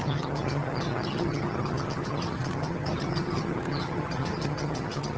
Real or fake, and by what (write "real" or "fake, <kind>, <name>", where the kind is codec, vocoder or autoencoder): fake, vocoder, HiFi-GAN